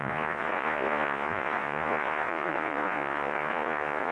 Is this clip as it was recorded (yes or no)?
no